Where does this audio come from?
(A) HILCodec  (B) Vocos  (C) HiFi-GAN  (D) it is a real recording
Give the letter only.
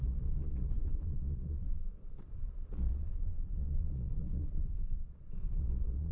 B